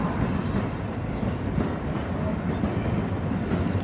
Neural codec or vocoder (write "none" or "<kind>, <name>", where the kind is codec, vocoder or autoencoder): none